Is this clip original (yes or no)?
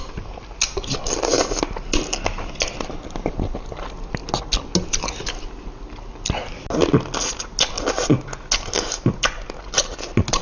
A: yes